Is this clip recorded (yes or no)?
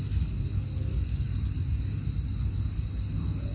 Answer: yes